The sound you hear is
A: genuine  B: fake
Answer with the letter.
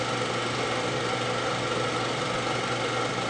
A